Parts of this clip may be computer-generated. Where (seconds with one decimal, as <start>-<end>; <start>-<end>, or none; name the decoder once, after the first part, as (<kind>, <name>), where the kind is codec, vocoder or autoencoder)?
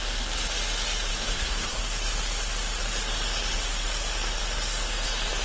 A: 1.1-1.8 (codec, SNAC)